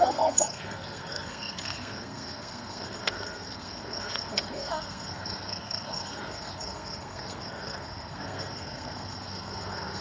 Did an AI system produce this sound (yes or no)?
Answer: yes